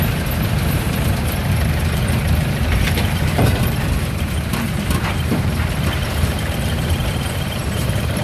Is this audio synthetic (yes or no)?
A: yes